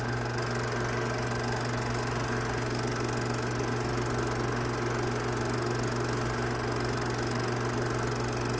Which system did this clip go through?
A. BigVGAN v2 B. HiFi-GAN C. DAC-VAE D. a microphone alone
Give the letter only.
D